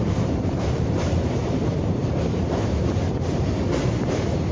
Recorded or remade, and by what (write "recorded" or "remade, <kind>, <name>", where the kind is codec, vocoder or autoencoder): remade, vocoder, BigVGAN v2